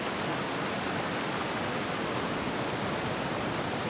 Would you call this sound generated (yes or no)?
no